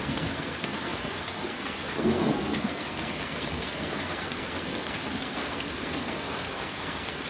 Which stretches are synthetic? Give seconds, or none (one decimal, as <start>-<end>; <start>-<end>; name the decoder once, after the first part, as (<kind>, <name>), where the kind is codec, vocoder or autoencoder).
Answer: 0.0-7.3 (codec, SNAC)